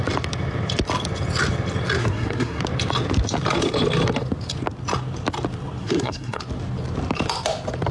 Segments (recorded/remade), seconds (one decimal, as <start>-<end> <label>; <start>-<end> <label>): 0.0-2.0 recorded; 2.0-2.6 remade; 2.6-5.8 recorded; 5.8-6.4 remade; 6.4-7.9 recorded